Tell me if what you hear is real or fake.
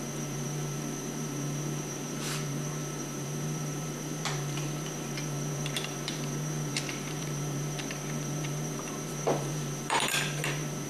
fake